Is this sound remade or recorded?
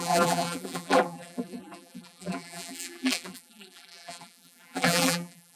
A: remade